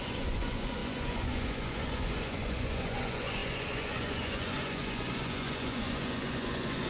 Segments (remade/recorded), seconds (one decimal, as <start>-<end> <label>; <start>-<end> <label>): 0.0-6.9 remade